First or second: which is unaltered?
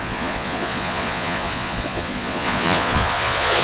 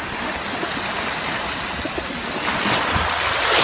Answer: second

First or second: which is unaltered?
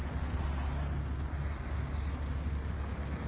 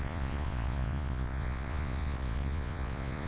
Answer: first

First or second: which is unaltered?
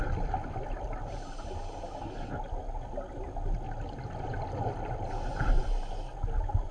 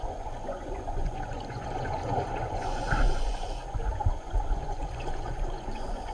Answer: first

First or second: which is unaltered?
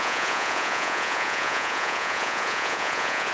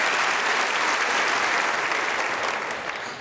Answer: second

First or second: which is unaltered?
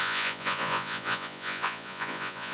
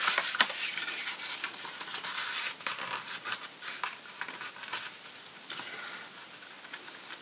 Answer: second